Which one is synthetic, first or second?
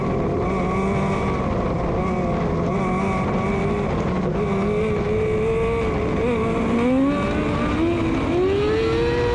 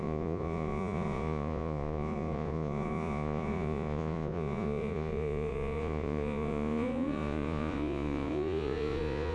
second